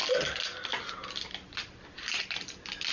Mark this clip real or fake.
real